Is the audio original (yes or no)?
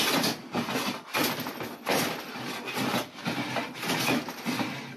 yes